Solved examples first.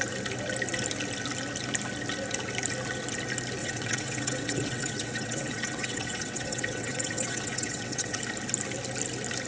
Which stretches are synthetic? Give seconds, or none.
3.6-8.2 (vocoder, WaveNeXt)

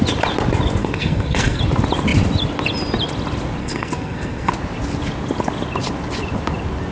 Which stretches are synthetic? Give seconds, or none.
0.8-1.6 (codec, SNAC); 3.6-4.5

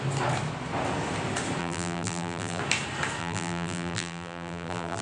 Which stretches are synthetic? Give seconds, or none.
1.6-2.6 (vocoder, BigVGAN v2); 3.2-5.0

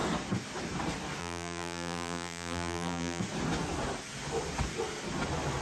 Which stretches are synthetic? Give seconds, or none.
1.2-3.2 (vocoder, BigVGAN v2)

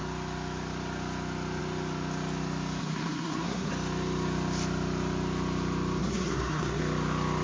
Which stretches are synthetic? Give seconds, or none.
2.8-3.7 (codec, SNAC); 6.0-6.8